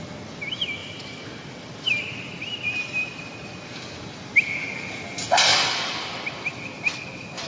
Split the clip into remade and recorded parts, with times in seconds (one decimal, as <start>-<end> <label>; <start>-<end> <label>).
0.0-0.8 recorded; 0.8-2.0 remade; 2.0-2.4 recorded; 2.4-3.3 remade; 3.3-5.5 recorded; 5.5-6.1 remade; 6.1-7.5 recorded